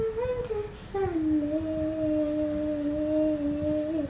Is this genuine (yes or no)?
yes